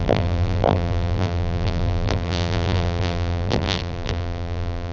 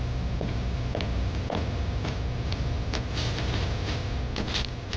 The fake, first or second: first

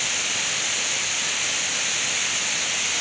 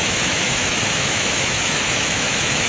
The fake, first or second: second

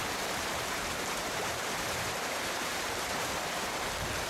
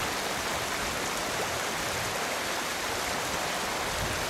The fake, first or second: first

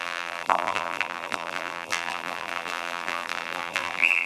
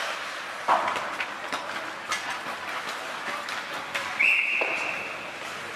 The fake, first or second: first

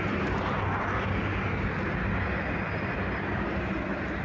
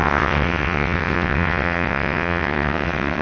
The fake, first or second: second